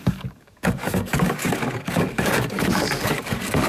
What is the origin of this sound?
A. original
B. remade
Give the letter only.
B